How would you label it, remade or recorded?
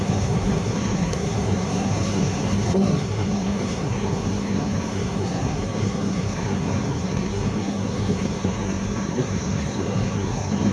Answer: remade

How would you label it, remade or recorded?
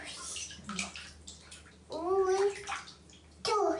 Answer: recorded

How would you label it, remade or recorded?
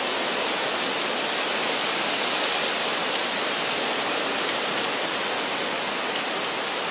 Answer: recorded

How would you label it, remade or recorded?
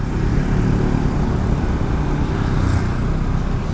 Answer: recorded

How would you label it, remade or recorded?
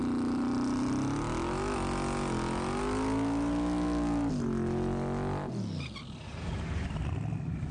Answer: recorded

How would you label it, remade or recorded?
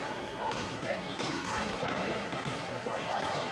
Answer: remade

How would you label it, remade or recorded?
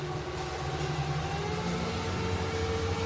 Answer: recorded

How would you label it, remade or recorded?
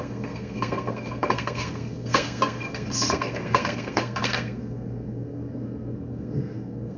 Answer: remade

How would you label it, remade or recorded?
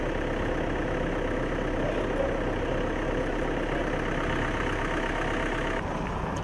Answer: recorded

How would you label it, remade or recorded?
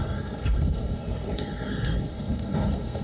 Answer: remade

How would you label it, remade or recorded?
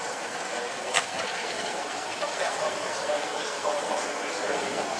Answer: remade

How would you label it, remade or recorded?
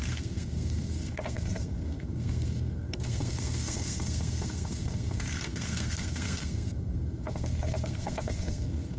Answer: remade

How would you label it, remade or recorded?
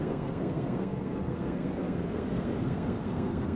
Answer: remade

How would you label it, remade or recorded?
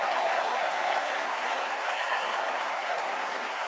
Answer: remade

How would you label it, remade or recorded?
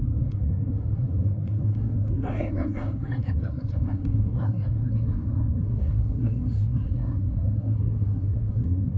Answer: remade